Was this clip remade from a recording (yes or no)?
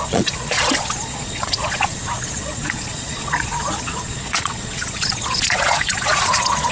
yes